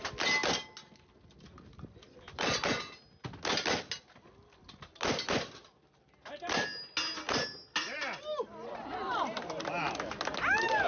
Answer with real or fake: real